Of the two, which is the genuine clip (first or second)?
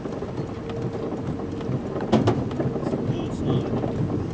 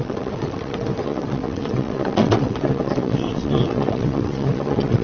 first